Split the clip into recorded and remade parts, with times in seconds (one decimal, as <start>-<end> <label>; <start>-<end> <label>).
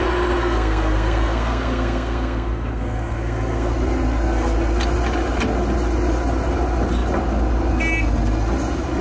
0.0-0.4 recorded; 0.4-3.7 remade; 3.7-9.0 recorded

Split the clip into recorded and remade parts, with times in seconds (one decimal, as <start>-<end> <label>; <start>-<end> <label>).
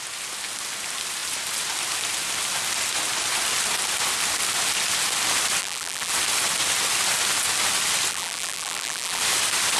0.0-5.6 recorded; 5.6-6.1 remade; 6.1-8.1 recorded; 8.1-9.2 remade; 9.2-9.8 recorded